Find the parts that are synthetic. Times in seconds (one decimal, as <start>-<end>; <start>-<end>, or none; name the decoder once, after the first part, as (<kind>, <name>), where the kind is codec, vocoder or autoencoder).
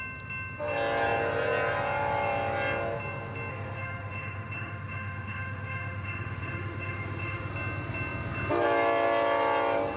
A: 3.5-7.5 (autoencoder, DAC-VAE)